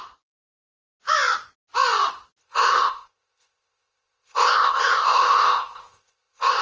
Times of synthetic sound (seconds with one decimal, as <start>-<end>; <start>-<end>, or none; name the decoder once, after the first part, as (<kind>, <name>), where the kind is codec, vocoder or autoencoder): 2.4-6.6 (codec, ZipCodec)